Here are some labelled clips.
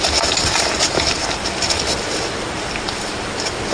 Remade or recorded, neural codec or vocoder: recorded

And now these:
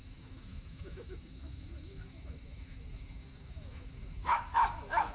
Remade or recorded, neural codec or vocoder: remade, autoencoder, DAC-VAE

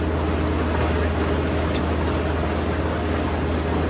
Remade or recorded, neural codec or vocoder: recorded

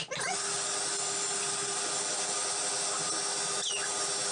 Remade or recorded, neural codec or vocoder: recorded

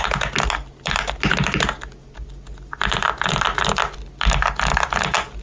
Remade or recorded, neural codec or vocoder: recorded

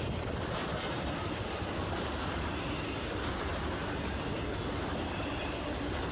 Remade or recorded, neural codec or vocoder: recorded